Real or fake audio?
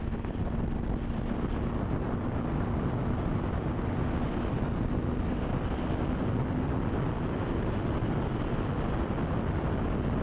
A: real